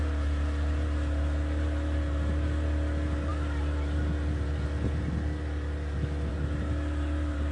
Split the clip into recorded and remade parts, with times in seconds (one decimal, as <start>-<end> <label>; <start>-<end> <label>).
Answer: 0.0-7.5 recorded